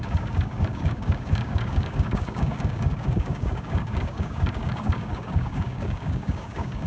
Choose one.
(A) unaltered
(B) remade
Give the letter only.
B